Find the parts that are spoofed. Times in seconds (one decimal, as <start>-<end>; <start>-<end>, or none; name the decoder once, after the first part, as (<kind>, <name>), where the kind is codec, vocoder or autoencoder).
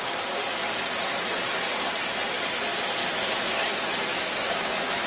3.0-3.6 (autoencoder, DAC-VAE); 4.1-5.1